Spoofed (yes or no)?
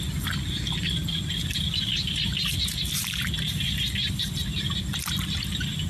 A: no